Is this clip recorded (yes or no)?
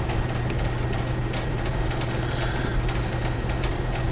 yes